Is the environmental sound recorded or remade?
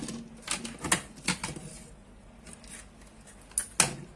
recorded